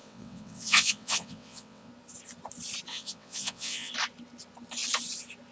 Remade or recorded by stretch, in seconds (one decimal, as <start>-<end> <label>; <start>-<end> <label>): 0.0-1.9 remade; 1.9-2.9 recorded; 2.9-3.9 remade; 3.9-5.5 recorded